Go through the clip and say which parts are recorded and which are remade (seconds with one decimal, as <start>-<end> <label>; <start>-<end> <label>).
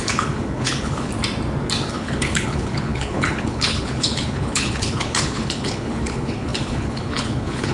0.0-1.1 remade; 1.1-1.9 recorded; 1.9-7.7 remade